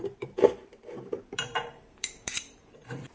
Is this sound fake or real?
fake